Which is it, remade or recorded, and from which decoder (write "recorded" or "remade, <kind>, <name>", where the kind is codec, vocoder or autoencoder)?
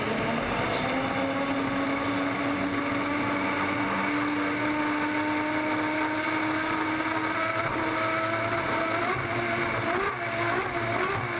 recorded